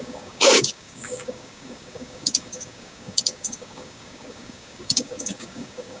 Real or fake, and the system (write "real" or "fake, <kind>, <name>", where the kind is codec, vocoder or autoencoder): fake, codec, DAC